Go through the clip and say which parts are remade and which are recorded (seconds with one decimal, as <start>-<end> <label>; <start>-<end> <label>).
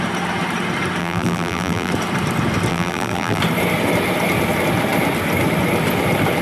0.0-1.0 recorded; 1.0-1.9 remade; 1.9-2.7 recorded; 2.7-3.4 remade; 3.4-6.4 recorded